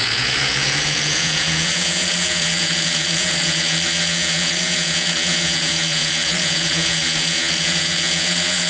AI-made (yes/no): yes